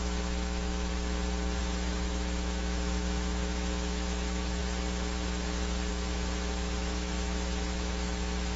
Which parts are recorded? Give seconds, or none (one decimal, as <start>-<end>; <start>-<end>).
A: 0.9-1.6; 4.6-5.9